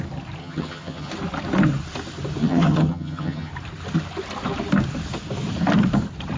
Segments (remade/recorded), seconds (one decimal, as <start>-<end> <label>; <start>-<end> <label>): 0.0-0.4 recorded; 0.4-1.1 remade; 1.1-2.4 recorded; 2.4-3.5 remade; 3.5-6.4 recorded